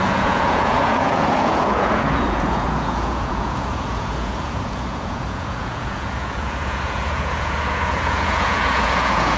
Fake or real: fake